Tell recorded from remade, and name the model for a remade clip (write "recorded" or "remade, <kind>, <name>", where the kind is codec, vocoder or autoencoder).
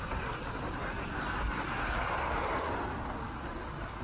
recorded